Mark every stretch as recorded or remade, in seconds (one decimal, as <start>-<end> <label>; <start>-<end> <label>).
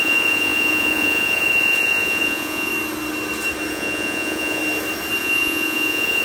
0.0-2.7 remade; 2.7-3.7 recorded; 3.7-4.6 remade; 4.6-5.2 recorded; 5.2-6.2 remade